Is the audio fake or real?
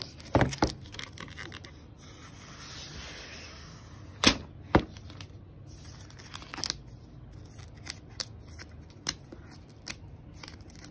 real